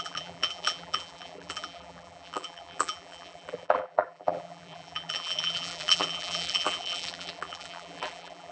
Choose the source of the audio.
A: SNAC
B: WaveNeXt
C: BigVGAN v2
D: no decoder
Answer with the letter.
C